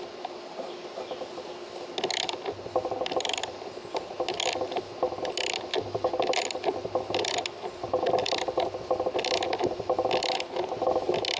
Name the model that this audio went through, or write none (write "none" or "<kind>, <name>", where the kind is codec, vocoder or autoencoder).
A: none